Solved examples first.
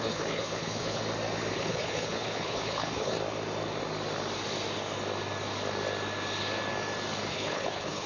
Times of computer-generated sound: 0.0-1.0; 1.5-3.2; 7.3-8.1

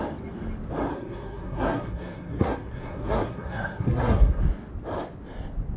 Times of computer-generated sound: 0.9-4.4

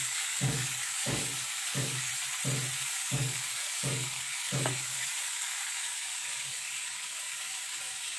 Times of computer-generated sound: 0.0-2.1; 2.8-8.2

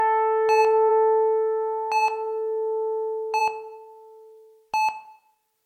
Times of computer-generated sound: none

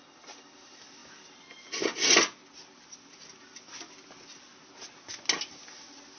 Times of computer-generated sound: none